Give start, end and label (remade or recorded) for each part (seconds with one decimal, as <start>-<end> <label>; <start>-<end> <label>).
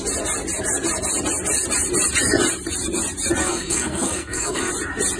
0.0-3.4 recorded; 3.4-4.7 remade; 4.7-5.2 recorded